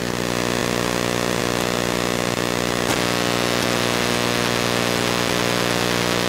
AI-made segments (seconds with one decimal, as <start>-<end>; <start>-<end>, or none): none